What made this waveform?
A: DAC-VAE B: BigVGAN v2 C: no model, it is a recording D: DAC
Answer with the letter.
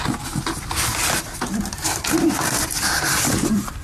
C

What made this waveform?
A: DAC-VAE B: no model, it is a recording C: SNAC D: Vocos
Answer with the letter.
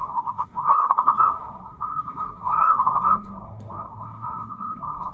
C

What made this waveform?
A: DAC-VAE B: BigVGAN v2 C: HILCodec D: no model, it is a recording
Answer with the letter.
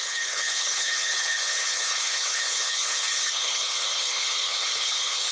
C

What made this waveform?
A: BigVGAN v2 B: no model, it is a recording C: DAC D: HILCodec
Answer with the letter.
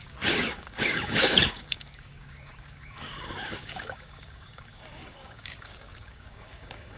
C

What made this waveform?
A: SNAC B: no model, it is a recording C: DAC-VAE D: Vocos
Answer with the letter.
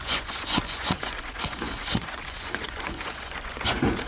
D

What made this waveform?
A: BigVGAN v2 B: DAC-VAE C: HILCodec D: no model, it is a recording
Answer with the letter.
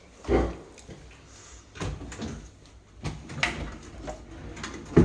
D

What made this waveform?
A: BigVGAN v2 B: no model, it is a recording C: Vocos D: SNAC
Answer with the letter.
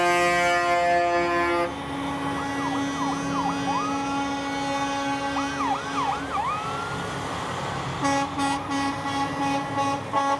B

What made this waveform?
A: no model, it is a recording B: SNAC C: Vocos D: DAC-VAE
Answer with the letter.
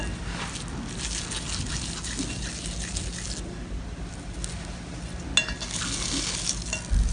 A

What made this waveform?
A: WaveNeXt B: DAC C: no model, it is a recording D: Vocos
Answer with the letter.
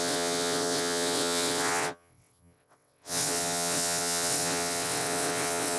A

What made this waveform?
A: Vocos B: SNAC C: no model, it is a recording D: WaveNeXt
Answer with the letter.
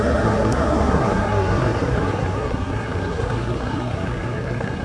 B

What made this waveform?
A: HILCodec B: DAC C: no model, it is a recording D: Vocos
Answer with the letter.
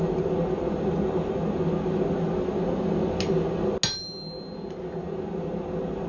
C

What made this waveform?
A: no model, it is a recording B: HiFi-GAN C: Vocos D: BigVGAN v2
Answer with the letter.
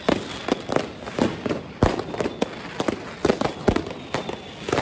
A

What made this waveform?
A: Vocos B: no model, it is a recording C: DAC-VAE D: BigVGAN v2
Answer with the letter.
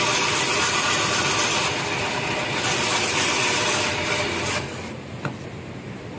B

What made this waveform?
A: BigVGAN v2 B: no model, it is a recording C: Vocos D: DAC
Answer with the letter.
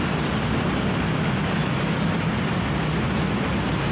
B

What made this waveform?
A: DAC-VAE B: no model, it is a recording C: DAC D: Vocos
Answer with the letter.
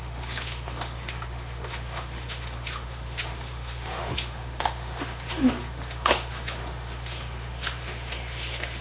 A